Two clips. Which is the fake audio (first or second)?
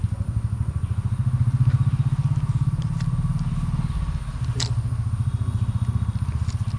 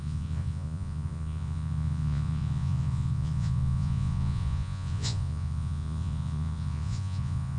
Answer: second